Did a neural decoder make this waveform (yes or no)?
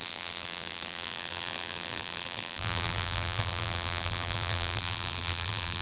yes